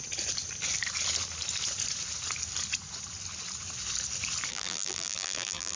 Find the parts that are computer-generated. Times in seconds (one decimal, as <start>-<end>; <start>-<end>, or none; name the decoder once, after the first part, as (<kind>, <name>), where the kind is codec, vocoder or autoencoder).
4.5-5.8 (vocoder, BigVGAN v2)